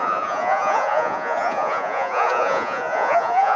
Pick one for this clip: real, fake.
fake